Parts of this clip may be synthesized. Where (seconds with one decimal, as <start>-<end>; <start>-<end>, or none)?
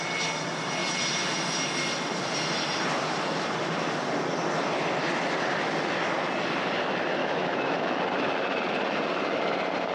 7.2-8.0